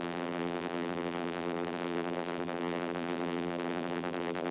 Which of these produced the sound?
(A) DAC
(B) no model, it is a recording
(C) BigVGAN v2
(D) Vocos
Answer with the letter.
C